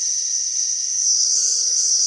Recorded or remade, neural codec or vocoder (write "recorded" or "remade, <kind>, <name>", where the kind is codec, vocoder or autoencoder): remade, codec, SNAC